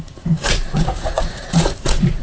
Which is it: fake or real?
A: fake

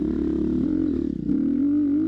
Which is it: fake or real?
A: real